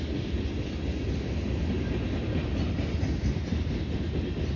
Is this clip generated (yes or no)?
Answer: no